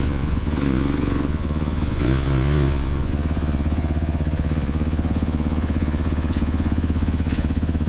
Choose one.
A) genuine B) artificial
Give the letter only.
B